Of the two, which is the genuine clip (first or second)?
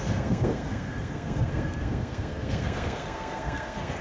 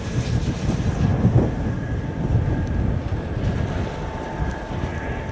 second